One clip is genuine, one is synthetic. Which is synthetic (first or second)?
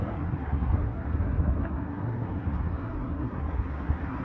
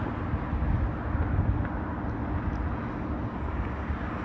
first